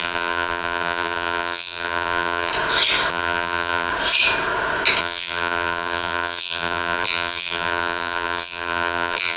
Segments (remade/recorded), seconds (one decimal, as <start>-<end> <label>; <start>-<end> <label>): 0.0-2.5 remade; 2.5-3.1 recorded; 3.1-3.9 remade; 3.9-5.0 recorded; 5.0-9.4 remade